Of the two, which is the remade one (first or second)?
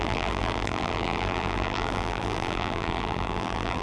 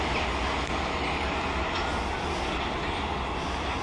first